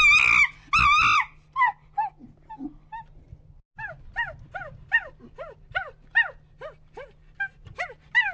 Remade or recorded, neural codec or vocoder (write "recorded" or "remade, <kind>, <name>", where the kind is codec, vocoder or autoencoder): recorded